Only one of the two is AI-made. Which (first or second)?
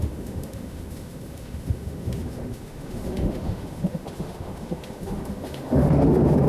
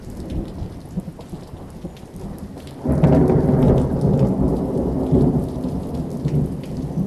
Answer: first